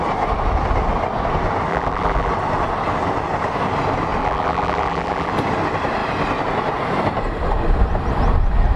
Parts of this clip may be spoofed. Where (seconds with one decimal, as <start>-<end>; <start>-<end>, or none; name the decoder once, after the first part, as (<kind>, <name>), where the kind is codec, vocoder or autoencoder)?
1.7-2.3 (vocoder, BigVGAN v2); 4.2-5.3